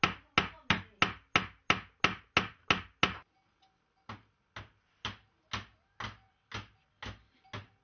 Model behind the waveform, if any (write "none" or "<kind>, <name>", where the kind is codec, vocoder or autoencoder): none